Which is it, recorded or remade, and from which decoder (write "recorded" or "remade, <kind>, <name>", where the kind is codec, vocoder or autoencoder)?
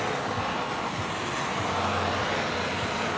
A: recorded